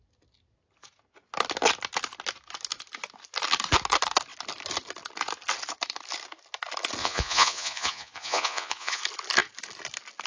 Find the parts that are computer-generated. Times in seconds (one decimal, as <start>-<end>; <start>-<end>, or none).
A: 7.0-9.0

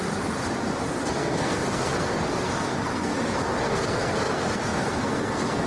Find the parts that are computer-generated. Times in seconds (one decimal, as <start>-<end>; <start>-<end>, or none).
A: 1.0-5.7

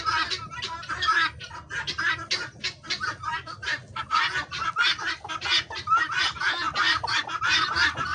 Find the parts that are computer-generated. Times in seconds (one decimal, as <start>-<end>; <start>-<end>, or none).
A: none

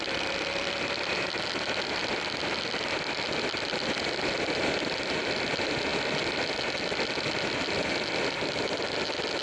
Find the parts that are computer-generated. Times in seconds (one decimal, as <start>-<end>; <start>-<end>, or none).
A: none

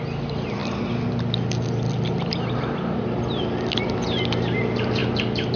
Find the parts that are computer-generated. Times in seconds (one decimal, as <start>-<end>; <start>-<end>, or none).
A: none